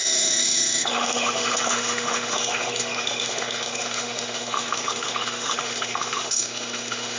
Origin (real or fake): fake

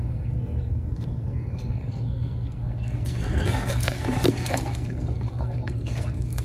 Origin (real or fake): fake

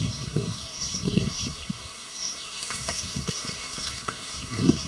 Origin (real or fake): fake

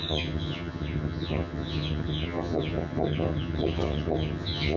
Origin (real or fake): fake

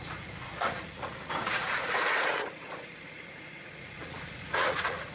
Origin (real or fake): fake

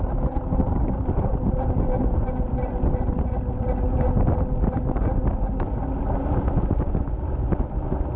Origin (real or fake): real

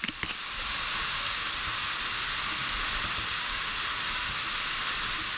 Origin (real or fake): real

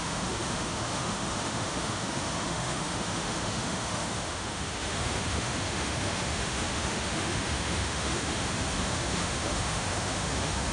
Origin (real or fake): fake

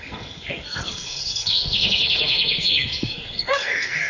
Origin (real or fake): fake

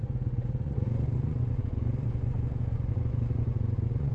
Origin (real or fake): fake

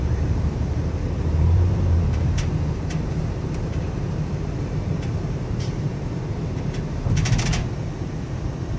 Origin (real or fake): fake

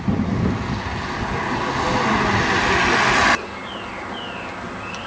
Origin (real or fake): real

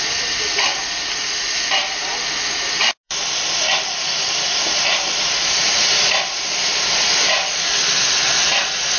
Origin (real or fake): real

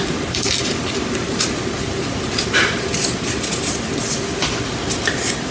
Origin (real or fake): real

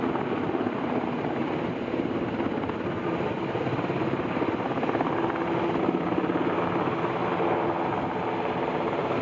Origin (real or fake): real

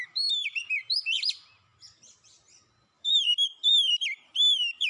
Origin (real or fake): fake